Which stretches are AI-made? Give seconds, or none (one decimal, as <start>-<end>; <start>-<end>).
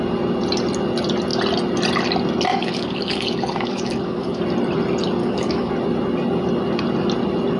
2.5-4.4; 5.2-5.7